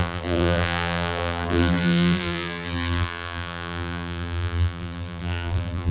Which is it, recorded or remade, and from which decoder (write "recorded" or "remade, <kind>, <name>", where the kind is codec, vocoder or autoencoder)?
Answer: remade, vocoder, BigVGAN v2